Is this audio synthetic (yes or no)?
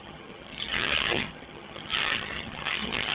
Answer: yes